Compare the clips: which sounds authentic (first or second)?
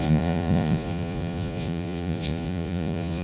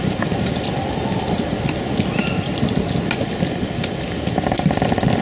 second